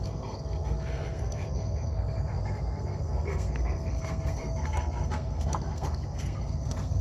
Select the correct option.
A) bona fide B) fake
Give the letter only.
B